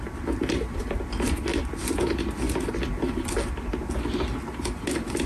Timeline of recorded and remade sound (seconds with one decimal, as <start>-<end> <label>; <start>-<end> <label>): 0.0-5.3 recorded